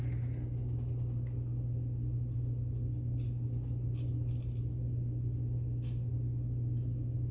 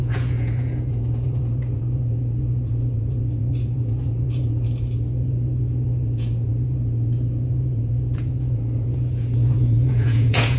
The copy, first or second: second